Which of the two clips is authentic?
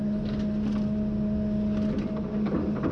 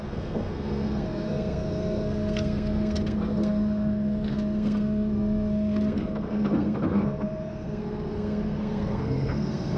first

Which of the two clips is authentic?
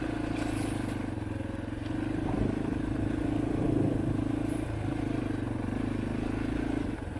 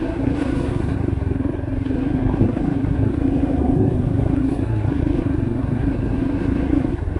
first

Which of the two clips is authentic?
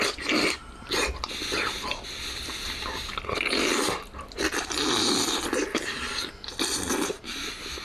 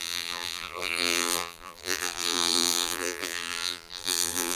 first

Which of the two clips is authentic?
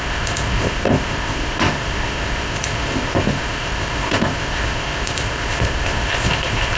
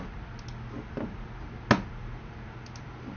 second